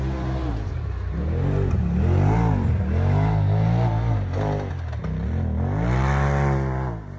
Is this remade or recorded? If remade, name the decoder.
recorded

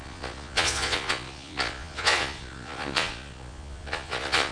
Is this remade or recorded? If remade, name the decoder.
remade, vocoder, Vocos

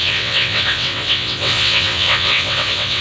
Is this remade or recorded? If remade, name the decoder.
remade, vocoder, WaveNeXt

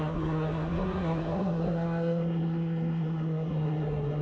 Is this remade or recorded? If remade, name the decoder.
remade, codec, SNAC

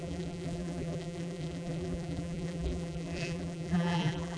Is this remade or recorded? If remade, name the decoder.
remade, vocoder, BigVGAN v2